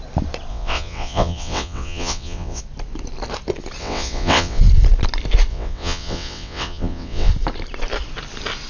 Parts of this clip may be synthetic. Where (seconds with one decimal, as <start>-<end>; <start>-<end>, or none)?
0.5-2.6; 3.8-4.6; 5.5-7.3